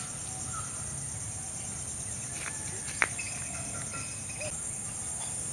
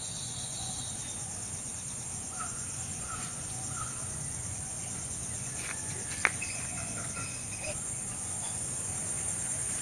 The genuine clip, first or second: first